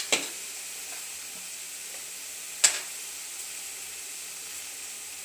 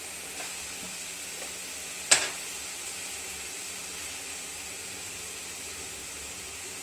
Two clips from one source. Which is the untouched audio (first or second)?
first